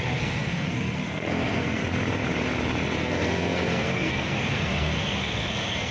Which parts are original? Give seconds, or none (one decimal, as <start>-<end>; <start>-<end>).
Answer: 1.8-3.0